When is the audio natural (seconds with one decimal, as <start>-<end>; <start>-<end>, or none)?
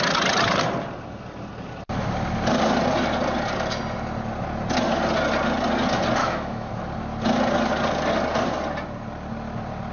0.0-6.2; 6.7-9.9